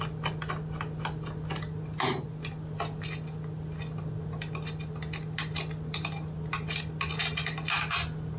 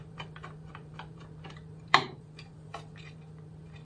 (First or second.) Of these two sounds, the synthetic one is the second